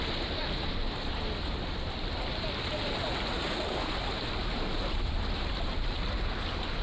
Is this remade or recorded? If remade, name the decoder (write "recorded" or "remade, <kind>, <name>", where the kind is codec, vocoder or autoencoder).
recorded